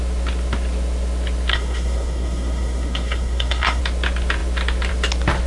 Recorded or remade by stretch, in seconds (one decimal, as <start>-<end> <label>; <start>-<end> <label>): 0.0-1.5 recorded; 1.5-3.8 remade; 3.8-5.5 recorded